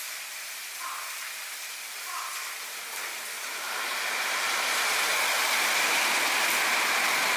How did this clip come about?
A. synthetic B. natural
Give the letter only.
B